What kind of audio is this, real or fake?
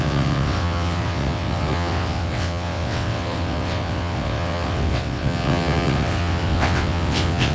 fake